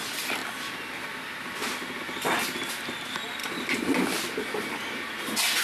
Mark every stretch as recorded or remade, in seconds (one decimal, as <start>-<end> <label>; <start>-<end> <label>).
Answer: 0.0-5.6 recorded